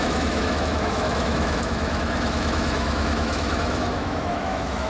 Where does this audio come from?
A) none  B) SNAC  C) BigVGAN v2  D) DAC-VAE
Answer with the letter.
D